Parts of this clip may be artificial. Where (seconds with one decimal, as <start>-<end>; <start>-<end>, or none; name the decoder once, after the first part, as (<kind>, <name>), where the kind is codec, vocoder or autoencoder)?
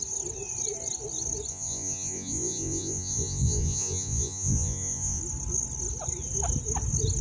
1.5-5.2 (vocoder, Vocos)